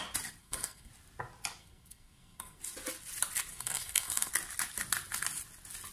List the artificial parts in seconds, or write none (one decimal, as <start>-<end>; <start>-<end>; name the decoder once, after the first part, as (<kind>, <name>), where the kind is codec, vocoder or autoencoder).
0.4-0.9 (codec, SNAC); 1.6-2.6; 3.5-4.3

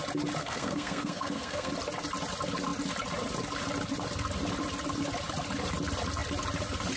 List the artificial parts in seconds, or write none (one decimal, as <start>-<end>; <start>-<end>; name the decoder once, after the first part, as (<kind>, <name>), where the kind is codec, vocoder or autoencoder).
0.4-1.7 (codec, SNAC)

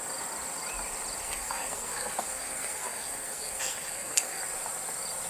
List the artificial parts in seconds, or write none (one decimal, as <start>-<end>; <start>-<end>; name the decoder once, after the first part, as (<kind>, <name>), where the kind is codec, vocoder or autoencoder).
1.2-4.4 (codec, SNAC)

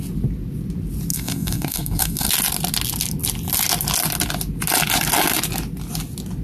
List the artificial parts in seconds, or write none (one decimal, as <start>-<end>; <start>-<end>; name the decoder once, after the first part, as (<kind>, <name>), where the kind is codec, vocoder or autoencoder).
1.1-2.3 (codec, SNAC)